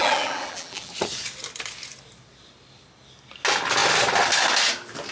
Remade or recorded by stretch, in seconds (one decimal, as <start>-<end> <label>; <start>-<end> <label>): 0.0-0.9 remade; 0.9-5.1 recorded